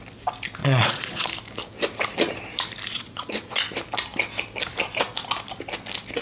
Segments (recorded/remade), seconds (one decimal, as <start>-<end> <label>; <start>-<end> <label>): 0.0-0.6 recorded; 0.6-1.3 remade; 1.3-2.9 recorded; 2.9-3.6 remade; 3.6-6.2 recorded